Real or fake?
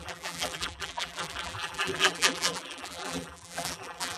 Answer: fake